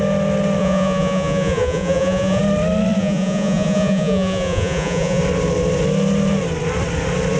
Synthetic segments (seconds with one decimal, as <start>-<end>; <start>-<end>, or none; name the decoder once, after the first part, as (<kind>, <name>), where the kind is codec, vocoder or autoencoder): 0.6-2.4 (vocoder, Vocos); 3.0-5.2